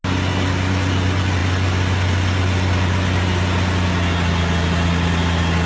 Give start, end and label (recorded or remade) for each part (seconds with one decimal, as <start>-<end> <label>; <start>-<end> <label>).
0.0-5.7 recorded